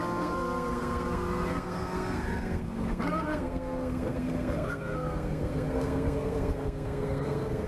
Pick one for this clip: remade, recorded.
remade